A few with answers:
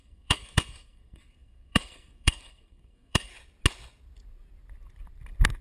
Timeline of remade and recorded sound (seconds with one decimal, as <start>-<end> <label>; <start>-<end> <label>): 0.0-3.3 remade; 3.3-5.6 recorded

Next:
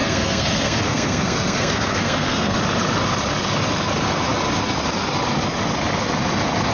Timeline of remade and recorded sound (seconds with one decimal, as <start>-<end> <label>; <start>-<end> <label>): 0.0-2.6 remade; 2.6-6.7 recorded

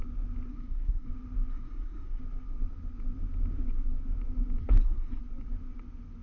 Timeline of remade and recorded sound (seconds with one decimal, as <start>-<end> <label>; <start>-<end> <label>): 0.0-0.5 recorded; 0.5-1.1 remade; 1.1-1.5 recorded; 1.5-2.2 remade; 2.2-4.6 recorded; 4.6-5.2 remade; 5.2-6.2 recorded

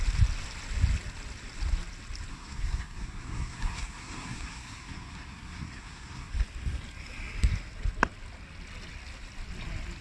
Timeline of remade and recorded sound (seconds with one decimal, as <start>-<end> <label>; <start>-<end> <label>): 0.0-2.3 recorded; 2.3-6.3 remade; 6.3-10.0 recorded

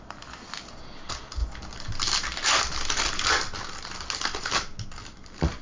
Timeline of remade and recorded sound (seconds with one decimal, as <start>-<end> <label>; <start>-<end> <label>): 0.0-5.6 recorded